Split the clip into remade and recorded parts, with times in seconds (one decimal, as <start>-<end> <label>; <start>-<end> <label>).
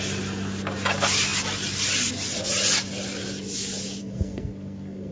0.0-4.0 recorded; 4.0-5.1 remade